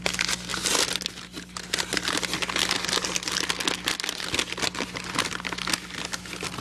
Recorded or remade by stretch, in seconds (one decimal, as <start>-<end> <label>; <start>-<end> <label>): 0.0-6.6 recorded